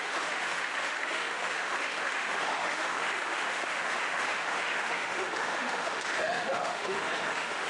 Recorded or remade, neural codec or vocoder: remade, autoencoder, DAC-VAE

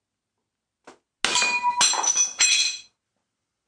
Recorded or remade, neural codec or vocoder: recorded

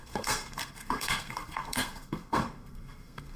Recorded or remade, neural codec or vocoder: remade, codec, SNAC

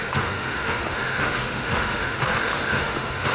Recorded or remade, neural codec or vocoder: remade, autoencoder, DAC-VAE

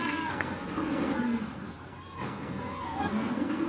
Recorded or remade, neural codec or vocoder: remade, codec, SNAC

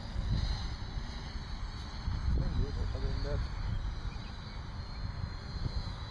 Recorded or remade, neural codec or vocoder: recorded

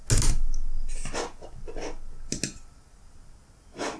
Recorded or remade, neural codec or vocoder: recorded